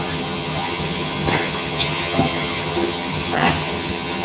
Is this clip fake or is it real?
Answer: fake